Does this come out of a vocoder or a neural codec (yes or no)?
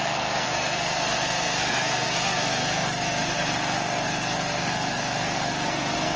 yes